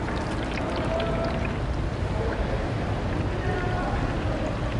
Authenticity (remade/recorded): recorded